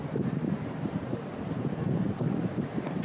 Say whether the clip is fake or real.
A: fake